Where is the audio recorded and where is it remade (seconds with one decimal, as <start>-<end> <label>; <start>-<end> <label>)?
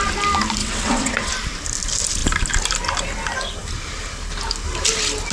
0.0-0.6 recorded; 0.6-1.3 remade; 1.3-5.3 recorded